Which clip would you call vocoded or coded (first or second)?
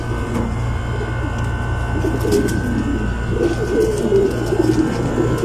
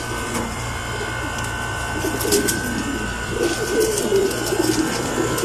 second